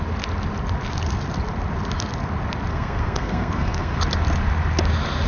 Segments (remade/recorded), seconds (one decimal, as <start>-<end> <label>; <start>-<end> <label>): 0.0-2.7 recorded; 2.7-4.0 remade; 4.0-5.3 recorded